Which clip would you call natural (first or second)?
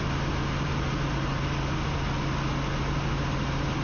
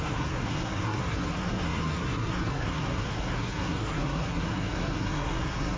first